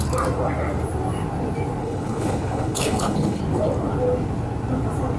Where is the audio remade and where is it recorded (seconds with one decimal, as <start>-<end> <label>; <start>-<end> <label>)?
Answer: 0.0-1.8 recorded; 1.8-3.4 remade; 3.4-5.2 recorded